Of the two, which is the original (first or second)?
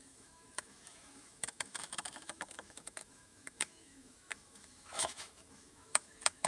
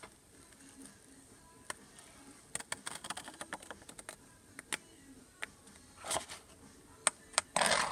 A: second